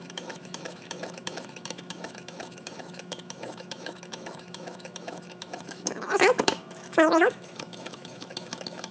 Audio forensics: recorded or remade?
remade